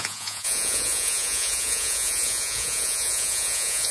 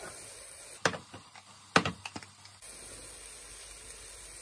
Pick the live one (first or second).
second